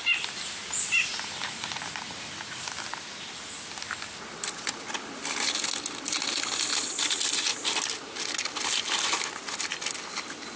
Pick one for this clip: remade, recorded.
recorded